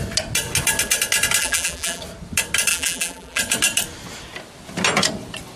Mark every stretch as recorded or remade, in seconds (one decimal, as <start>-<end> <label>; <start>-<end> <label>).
0.0-1.4 recorded; 1.4-2.0 remade; 2.0-2.7 recorded; 2.7-3.4 remade; 3.4-5.6 recorded